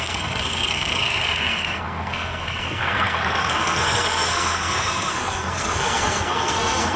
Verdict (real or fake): fake